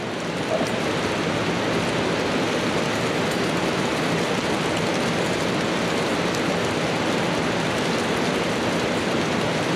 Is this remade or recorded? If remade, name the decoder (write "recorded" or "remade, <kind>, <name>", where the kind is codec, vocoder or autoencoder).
recorded